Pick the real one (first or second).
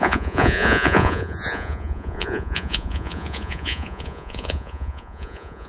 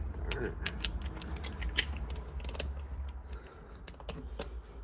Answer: second